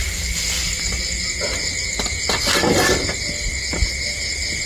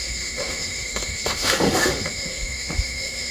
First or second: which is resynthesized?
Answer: second